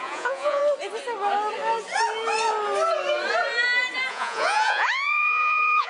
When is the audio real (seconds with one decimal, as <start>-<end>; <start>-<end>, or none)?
0.6-4.1